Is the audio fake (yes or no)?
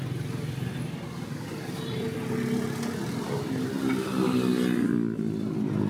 no